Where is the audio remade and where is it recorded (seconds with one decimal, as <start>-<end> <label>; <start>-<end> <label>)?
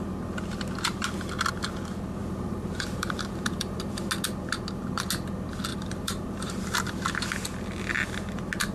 0.0-2.2 recorded; 2.2-4.1 remade; 4.1-5.7 recorded; 5.7-6.6 remade; 6.6-8.7 recorded